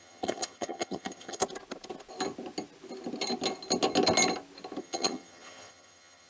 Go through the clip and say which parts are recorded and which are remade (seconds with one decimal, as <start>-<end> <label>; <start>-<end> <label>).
0.0-1.4 remade; 1.4-4.8 recorded; 4.8-6.3 remade